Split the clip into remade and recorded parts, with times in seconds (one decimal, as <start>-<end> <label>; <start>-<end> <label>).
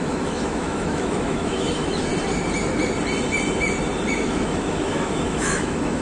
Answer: 0.0-2.1 remade; 2.1-4.1 recorded; 4.1-6.0 remade